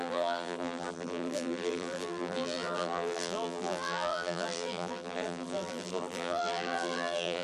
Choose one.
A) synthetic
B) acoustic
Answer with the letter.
A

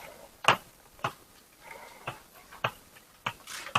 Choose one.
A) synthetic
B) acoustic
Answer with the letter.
B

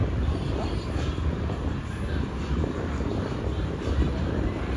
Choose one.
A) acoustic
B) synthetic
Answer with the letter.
B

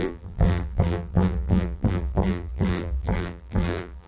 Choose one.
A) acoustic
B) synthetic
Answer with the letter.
B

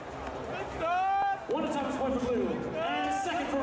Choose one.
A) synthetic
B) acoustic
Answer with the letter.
B